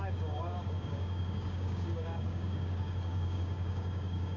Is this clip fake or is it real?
fake